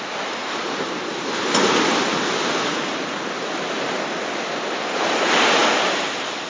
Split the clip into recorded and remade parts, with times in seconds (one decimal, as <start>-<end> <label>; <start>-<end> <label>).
0.0-0.4 recorded; 0.4-4.3 remade; 4.3-6.5 recorded